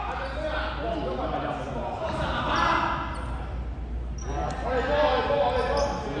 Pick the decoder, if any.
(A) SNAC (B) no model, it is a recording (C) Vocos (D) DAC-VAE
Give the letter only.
B